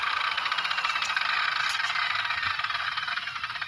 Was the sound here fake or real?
real